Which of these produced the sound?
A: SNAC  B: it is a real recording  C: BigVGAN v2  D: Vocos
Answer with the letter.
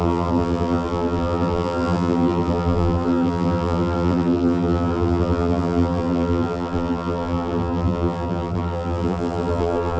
C